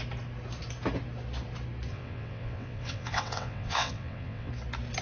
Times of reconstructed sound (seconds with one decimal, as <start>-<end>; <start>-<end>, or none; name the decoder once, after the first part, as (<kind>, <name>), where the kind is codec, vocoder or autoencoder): 1.9-4.5 (vocoder, WaveNeXt)